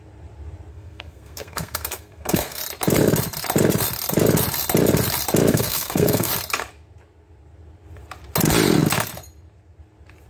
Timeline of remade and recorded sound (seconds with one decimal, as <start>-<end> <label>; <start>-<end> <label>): 0.0-0.7 recorded; 0.7-2.6 remade; 2.6-5.5 recorded; 5.5-6.3 remade; 6.3-10.3 recorded